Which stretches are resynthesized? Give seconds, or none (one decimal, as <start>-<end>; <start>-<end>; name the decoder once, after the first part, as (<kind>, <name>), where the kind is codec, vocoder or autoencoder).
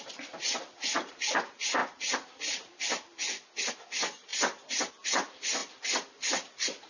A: none